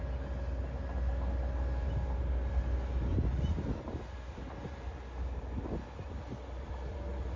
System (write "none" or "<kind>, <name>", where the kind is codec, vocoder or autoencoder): none